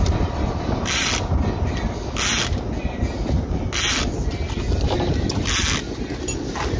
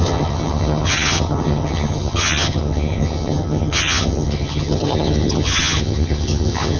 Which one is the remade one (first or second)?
second